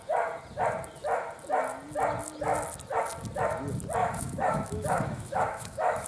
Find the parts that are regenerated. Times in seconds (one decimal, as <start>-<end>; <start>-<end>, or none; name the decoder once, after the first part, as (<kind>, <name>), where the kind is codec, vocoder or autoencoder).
4.0-6.1 (autoencoder, DAC-VAE)